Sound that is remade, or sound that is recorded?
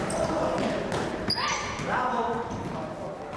recorded